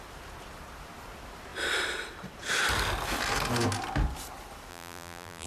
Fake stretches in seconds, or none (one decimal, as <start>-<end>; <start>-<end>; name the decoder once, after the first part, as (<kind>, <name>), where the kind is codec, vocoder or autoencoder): 4.7-5.5 (vocoder, BigVGAN v2)